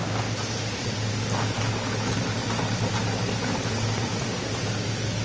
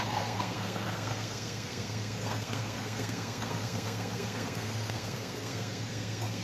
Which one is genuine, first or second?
first